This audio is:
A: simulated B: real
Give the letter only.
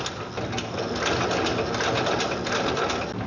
B